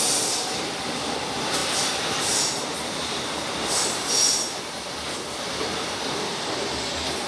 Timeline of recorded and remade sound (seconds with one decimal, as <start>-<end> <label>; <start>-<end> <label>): 0.0-1.6 recorded; 1.6-4.6 remade; 4.6-7.3 recorded